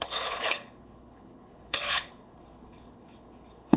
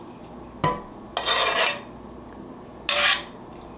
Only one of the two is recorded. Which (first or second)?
second